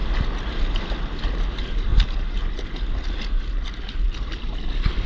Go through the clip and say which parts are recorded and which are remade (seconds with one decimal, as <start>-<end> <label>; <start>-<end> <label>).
0.0-5.1 recorded